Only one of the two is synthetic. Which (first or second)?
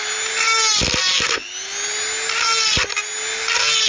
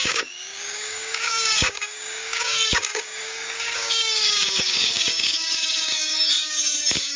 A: second